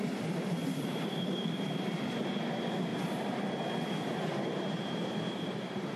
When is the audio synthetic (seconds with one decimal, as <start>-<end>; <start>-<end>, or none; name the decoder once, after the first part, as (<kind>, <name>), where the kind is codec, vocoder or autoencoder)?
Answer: 0.6-2.4 (vocoder, BigVGAN v2); 2.9-6.0